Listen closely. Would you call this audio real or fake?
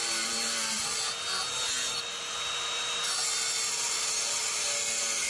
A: real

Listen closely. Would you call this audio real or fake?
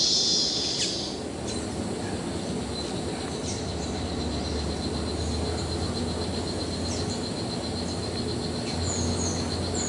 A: real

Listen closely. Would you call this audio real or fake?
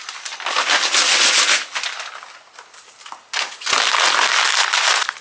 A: real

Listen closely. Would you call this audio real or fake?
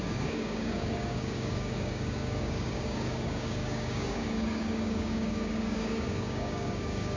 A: fake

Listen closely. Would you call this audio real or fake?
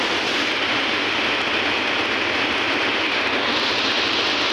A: real